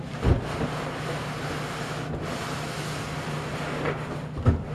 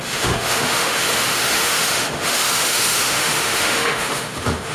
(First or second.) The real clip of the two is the first